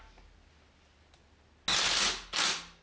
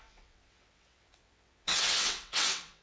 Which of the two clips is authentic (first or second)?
first